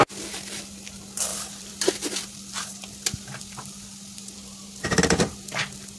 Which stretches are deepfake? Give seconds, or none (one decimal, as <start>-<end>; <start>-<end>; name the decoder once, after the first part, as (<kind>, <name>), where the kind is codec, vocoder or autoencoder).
1.3-3.4 (vocoder, BigVGAN v2); 4.4-5.6